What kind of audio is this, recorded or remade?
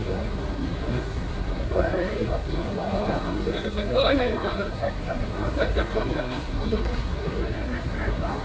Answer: remade